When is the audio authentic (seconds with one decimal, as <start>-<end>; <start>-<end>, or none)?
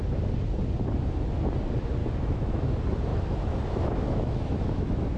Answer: 0.0-2.0; 2.7-3.1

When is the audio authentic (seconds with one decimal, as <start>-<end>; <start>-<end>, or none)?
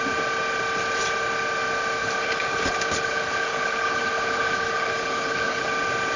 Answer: 0.0-2.0; 5.7-6.2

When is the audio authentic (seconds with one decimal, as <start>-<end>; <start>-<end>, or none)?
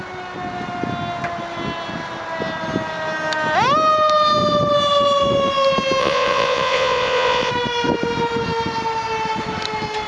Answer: 0.0-6.0; 7.5-10.1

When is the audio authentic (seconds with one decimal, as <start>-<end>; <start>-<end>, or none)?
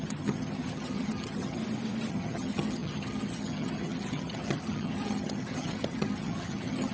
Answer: 1.6-2.1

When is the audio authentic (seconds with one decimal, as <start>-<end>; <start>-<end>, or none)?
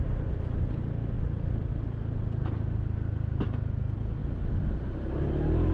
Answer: 0.0-5.7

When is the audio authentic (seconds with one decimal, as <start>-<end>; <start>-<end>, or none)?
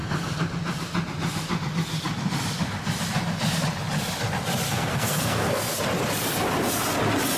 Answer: 0.0-4.7; 5.8-7.4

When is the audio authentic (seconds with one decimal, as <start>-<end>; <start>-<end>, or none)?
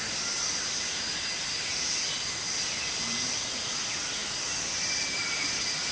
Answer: 0.0-5.9